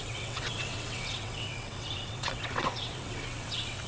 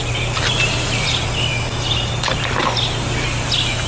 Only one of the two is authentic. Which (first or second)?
second